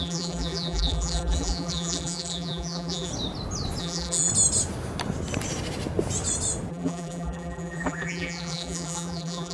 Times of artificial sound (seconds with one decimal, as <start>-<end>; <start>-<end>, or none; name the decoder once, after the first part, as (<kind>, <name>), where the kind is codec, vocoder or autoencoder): 0.0-3.1 (vocoder, BigVGAN v2); 3.8-4.3; 6.7-9.5